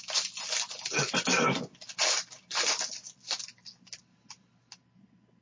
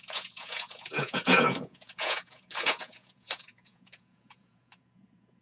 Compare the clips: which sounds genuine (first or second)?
first